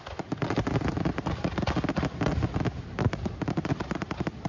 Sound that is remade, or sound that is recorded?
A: recorded